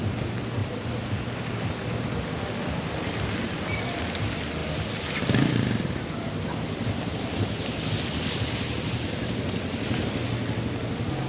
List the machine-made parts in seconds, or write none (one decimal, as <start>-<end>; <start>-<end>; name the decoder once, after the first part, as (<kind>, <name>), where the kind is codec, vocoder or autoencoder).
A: none